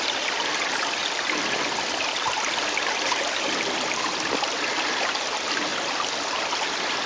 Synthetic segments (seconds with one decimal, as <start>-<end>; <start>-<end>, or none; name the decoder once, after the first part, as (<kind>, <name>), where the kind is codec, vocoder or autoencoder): none